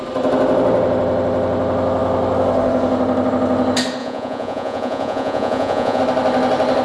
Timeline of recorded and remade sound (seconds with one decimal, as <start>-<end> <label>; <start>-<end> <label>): 0.0-4.0 recorded; 4.0-6.0 remade; 6.0-6.8 recorded